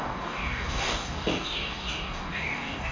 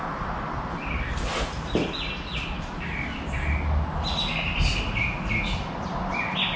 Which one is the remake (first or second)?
first